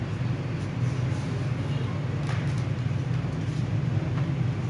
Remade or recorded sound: recorded